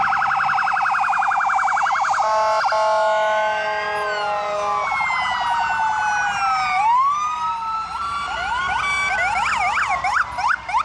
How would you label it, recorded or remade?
recorded